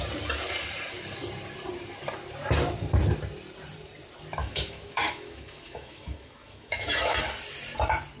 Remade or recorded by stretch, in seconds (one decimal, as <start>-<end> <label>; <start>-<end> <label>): 0.0-4.4 recorded; 4.4-7.2 remade; 7.2-8.2 recorded